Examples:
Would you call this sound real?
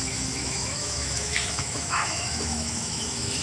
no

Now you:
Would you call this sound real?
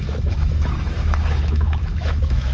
no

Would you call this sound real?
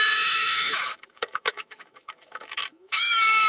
no